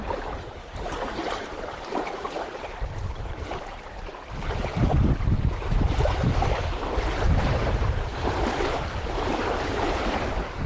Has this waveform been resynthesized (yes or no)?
yes